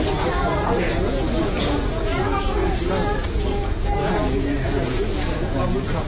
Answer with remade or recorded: remade